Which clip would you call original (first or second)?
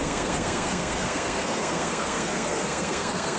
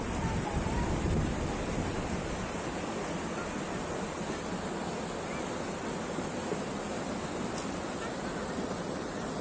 second